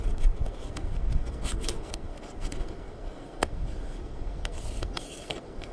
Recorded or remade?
remade